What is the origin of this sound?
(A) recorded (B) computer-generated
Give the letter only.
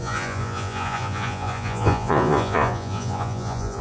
B